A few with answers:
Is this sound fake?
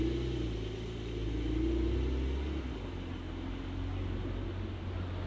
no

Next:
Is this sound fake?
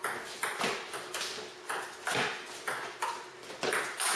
no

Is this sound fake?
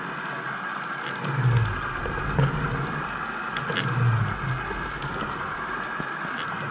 no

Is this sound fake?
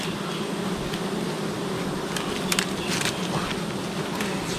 no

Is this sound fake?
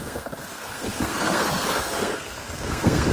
yes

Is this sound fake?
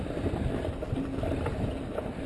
no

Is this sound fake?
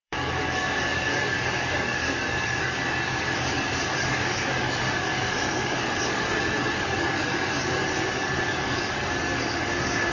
yes